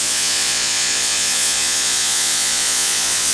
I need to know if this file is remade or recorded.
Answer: remade